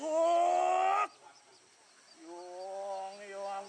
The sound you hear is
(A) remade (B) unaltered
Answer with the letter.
B